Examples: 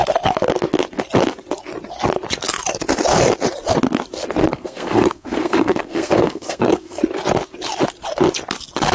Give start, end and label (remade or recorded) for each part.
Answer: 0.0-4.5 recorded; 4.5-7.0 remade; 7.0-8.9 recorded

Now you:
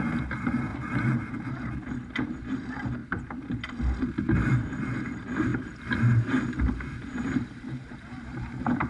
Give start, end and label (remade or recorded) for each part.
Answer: 0.0-3.0 remade; 3.0-4.4 recorded; 4.4-8.9 remade

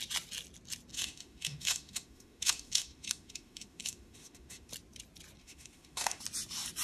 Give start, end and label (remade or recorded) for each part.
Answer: 0.0-0.9 recorded; 0.9-4.7 remade; 4.7-5.4 recorded; 5.4-6.2 remade; 6.2-6.8 recorded

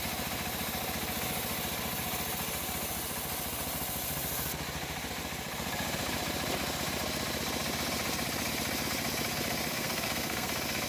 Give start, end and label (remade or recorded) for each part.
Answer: 0.0-9.7 recorded; 9.7-10.5 remade; 10.5-10.9 recorded

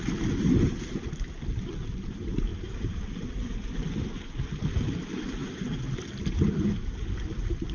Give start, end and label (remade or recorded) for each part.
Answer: 0.0-2.5 recorded; 2.5-3.3 remade; 3.3-7.7 recorded

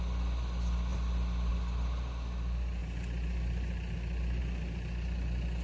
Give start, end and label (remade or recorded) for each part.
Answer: 0.0-5.6 recorded

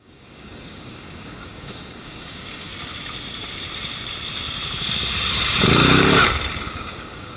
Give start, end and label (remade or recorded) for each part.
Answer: 0.0-2.7 remade; 2.7-6.7 recorded; 6.7-7.4 remade

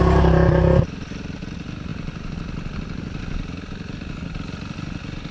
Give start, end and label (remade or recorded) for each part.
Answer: 0.0-5.3 recorded